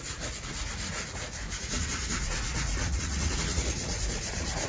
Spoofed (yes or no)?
yes